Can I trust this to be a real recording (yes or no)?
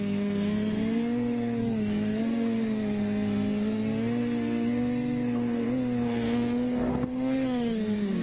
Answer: no